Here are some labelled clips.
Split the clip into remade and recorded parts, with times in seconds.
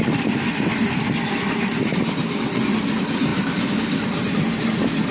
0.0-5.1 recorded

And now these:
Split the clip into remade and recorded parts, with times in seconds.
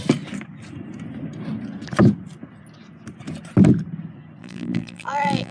0.0-4.4 recorded; 4.4-5.5 remade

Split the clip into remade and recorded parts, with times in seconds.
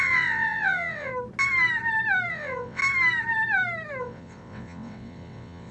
0.0-1.1 remade; 1.1-2.3 recorded; 2.3-2.8 remade; 2.8-4.0 recorded; 4.0-5.7 remade